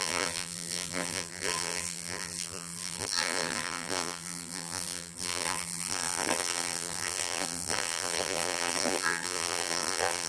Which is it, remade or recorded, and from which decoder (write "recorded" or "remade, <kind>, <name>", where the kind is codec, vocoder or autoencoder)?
remade, vocoder, BigVGAN v2